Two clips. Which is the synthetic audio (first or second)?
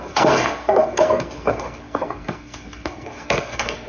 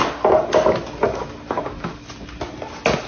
first